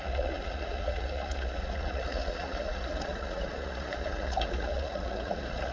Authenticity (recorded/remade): remade